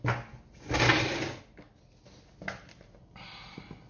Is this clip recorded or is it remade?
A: recorded